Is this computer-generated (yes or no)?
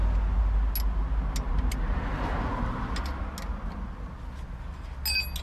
no